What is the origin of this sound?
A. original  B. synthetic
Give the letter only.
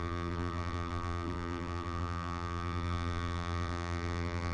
B